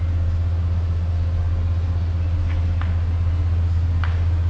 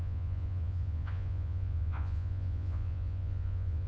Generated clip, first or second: second